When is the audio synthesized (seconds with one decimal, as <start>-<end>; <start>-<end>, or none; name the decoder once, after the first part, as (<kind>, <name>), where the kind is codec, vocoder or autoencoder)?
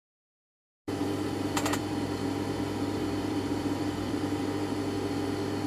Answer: 1.0-4.4 (vocoder, BigVGAN v2)